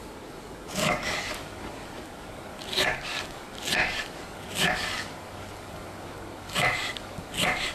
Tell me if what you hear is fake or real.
fake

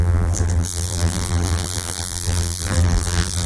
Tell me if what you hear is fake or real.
fake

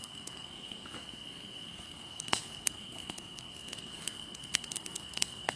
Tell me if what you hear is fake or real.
fake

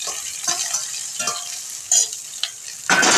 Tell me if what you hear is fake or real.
real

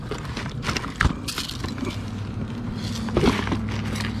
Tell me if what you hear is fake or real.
real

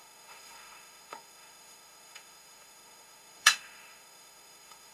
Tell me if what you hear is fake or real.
fake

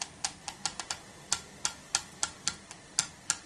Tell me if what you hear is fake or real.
real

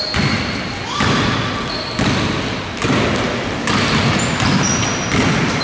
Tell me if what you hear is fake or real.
real